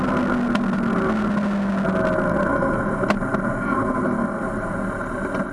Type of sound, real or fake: real